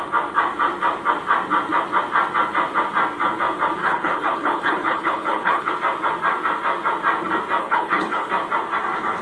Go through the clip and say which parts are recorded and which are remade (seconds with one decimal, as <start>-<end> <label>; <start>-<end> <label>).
0.0-3.8 recorded; 3.8-5.7 remade; 5.7-7.6 recorded; 7.6-8.3 remade; 8.3-9.2 recorded